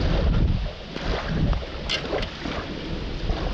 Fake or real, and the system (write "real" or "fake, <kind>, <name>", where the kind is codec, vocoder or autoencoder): real